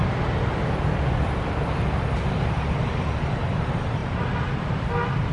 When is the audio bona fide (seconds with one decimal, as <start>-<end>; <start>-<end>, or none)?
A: 0.0-5.3